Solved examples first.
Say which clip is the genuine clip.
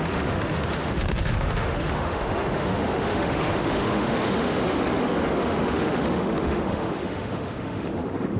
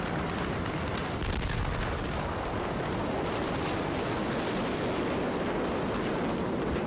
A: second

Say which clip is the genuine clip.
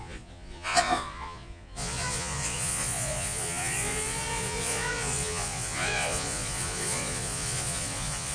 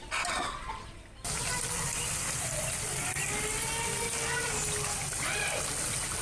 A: second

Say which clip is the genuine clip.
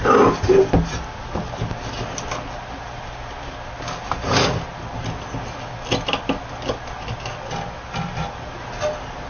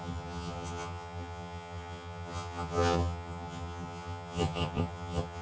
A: first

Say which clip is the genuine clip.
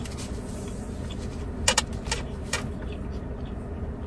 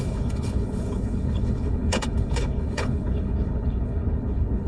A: first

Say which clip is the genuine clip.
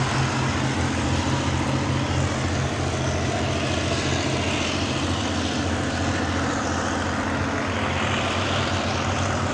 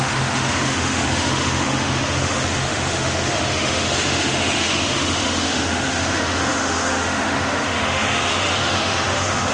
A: first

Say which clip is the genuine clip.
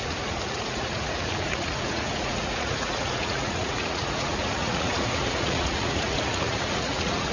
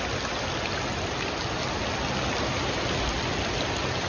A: second